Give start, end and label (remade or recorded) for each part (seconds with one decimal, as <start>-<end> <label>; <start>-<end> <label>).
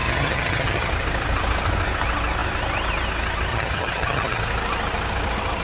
0.0-0.9 remade; 0.9-3.5 recorded; 3.5-4.4 remade; 4.4-5.6 recorded